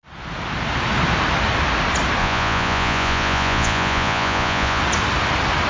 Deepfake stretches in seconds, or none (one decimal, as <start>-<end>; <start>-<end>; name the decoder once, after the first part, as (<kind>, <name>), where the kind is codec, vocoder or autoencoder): 2.2-4.8 (vocoder, Vocos)